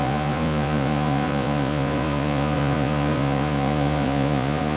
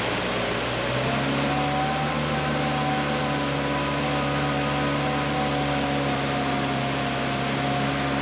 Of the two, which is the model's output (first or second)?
first